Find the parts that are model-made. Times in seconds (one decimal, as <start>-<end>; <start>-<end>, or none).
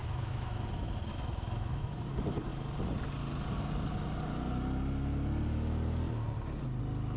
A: 0.0-0.6; 1.1-2.1